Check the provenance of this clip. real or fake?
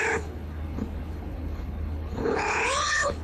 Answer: fake